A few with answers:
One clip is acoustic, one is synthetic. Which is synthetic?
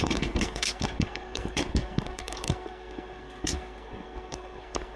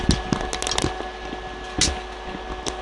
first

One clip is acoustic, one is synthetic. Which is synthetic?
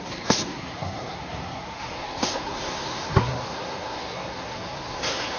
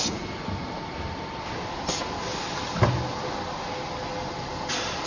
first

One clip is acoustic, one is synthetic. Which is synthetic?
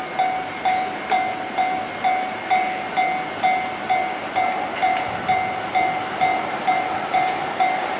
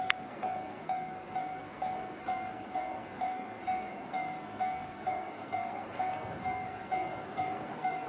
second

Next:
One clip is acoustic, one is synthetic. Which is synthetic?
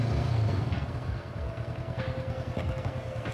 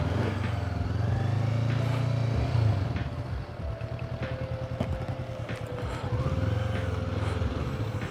first